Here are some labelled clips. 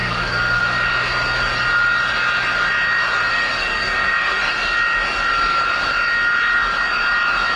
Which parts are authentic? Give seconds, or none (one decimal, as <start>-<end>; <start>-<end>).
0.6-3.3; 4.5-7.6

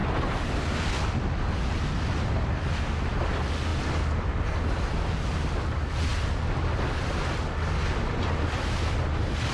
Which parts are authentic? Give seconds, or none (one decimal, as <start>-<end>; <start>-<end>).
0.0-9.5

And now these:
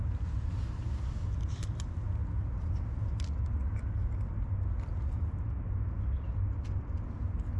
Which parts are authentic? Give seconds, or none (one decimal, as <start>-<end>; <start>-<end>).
0.0-7.6